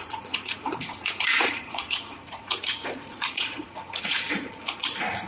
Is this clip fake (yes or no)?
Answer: yes